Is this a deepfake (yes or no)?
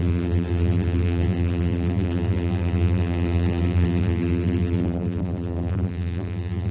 yes